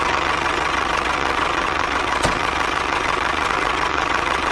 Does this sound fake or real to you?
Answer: fake